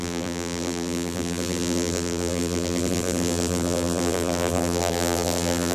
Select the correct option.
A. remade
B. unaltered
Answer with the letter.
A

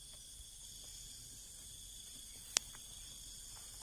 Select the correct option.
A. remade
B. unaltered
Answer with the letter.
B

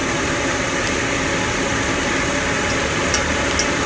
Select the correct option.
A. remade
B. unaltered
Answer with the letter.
B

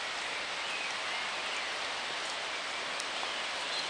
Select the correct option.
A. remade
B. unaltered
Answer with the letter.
B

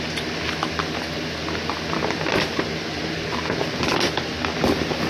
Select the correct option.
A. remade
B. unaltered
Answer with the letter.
B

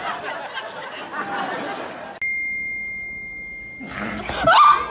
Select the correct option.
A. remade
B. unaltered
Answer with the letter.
B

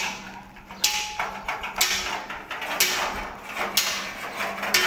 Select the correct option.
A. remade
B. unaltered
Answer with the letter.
B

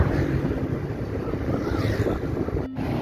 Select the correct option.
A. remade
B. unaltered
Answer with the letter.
B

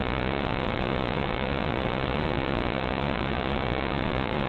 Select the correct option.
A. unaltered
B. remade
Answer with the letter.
B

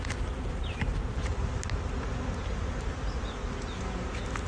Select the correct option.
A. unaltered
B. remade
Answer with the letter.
A